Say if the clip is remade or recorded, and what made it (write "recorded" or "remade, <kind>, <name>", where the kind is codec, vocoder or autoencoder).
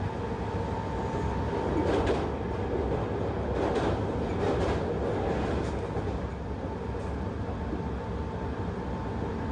recorded